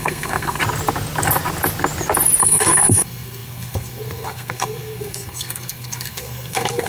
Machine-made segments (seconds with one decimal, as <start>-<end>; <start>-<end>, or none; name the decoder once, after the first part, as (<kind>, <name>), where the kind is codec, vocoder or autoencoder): 0.0-0.6 (codec, SNAC); 2.4-6.9